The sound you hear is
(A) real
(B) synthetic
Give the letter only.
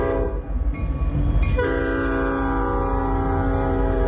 A